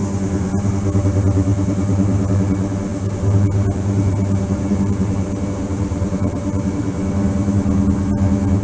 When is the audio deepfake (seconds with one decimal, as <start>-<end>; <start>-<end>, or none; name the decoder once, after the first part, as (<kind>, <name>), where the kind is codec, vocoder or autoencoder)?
0.0-0.7 (vocoder, BigVGAN v2); 1.5-2.3; 2.9-6.8